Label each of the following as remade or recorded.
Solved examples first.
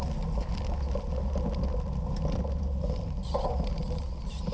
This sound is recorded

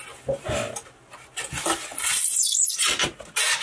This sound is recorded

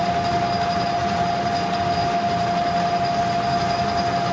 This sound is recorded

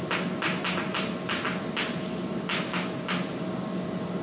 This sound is recorded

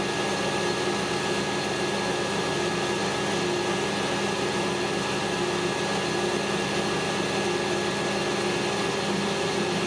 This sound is recorded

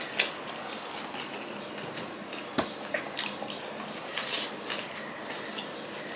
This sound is recorded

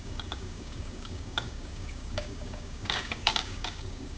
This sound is remade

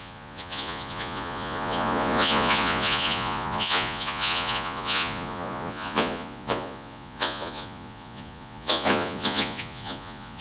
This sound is remade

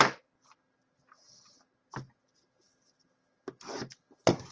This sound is recorded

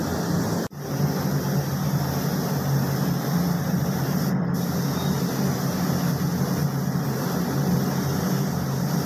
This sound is recorded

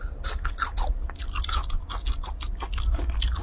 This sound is recorded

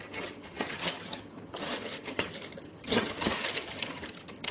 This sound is remade